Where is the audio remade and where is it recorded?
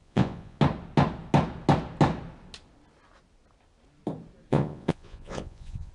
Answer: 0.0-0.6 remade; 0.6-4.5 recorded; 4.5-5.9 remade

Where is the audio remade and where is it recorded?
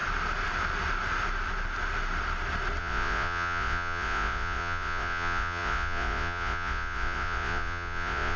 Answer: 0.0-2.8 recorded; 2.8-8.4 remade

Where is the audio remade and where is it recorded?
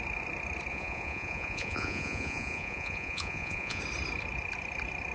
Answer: 0.0-0.7 recorded; 0.7-3.8 remade; 3.8-5.1 recorded